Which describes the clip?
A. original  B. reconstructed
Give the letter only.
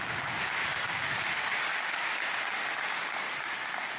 B